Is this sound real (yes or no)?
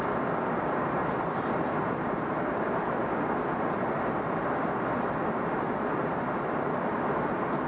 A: yes